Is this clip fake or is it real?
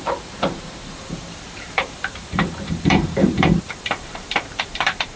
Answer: fake